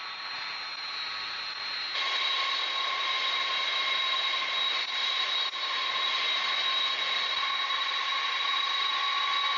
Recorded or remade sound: recorded